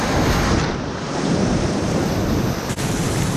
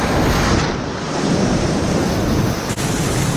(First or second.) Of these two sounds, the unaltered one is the second